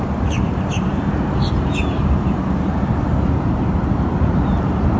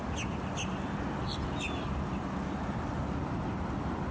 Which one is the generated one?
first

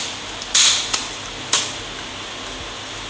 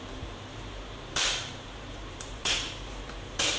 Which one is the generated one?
second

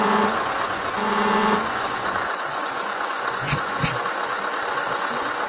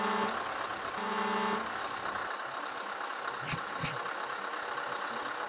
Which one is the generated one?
first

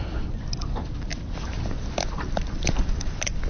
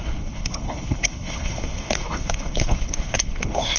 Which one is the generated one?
second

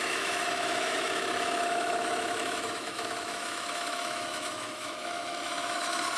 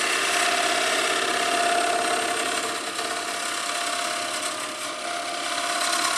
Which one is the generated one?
first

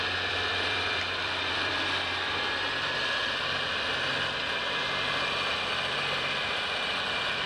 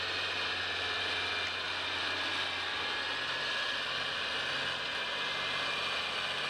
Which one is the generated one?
first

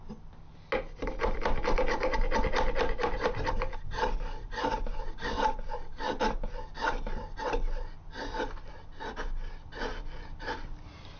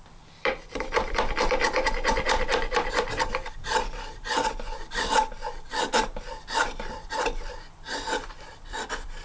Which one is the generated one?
second